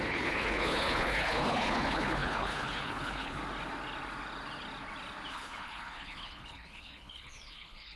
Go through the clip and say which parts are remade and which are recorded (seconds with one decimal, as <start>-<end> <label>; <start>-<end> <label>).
0.0-3.4 remade; 3.4-5.3 recorded; 5.3-8.0 remade